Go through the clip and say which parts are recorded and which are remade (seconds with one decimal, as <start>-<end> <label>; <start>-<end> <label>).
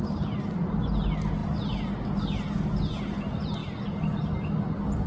0.0-5.1 recorded